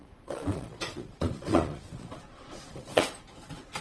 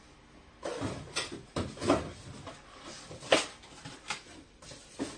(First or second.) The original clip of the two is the second